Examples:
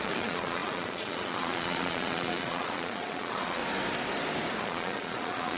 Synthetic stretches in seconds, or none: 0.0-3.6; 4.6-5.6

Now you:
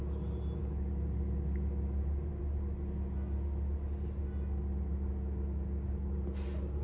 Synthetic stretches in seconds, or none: none

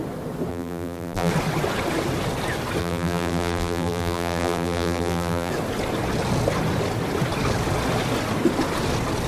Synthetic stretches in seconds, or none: 0.5-1.3; 2.8-5.5

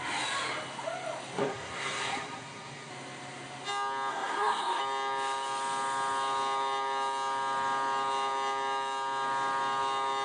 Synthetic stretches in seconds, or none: 1.4-2.9; 4.1-4.8

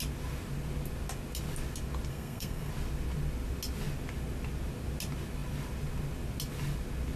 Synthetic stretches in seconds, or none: 2.1-2.7

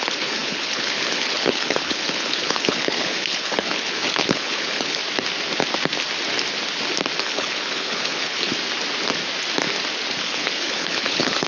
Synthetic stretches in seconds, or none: 0.0-5.0; 7.2-8.5; 10.2-11.5

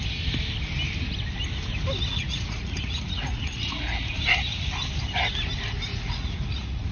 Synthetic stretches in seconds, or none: 2.1-4.1; 5.9-6.9

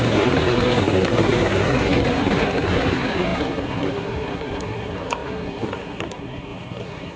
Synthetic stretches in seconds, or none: 0.0-7.2